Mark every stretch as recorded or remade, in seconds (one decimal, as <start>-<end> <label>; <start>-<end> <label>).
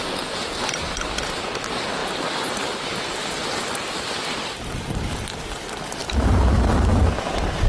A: 0.0-7.7 recorded